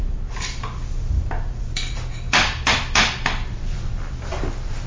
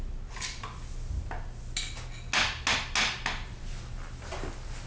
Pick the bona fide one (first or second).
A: second